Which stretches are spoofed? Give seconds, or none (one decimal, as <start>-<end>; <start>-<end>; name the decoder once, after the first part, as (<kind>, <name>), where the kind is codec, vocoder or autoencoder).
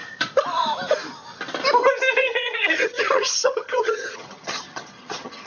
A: 2.2-5.5 (vocoder, HiFi-GAN)